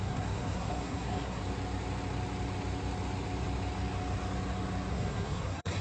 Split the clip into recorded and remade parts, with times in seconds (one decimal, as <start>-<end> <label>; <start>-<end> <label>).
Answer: 0.0-1.4 remade; 1.4-4.9 recorded; 4.9-5.8 remade